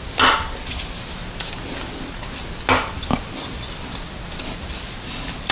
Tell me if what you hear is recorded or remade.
recorded